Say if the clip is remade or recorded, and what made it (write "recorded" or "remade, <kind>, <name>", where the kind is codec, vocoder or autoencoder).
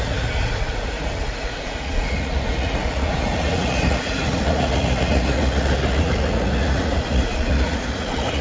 remade, vocoder, Vocos